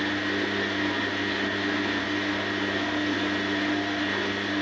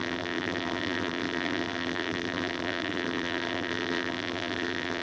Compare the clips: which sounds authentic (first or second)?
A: first